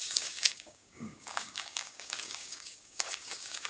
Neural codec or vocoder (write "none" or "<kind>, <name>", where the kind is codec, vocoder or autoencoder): codec, DAC